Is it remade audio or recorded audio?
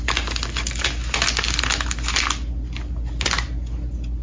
recorded